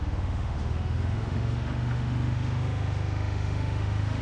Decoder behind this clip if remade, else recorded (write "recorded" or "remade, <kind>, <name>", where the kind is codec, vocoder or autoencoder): remade, autoencoder, DAC-VAE